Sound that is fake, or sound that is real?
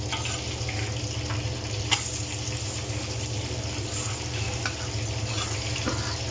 real